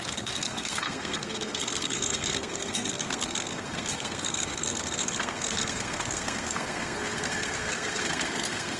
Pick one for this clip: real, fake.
fake